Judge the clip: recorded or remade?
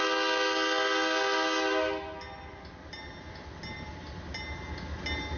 recorded